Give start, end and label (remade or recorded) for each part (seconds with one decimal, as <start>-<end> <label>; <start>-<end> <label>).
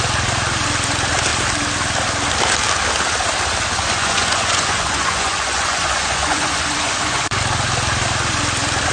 0.0-3.9 recorded; 3.9-7.4 remade; 7.4-8.9 recorded